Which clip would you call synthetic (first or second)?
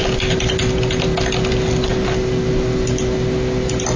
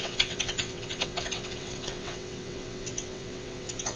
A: second